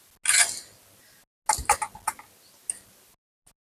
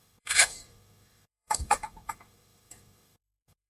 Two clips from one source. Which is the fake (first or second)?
second